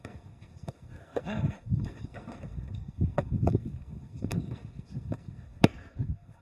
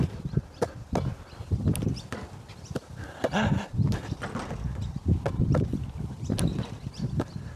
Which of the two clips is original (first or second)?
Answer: second